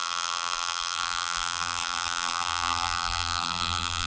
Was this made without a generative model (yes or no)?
no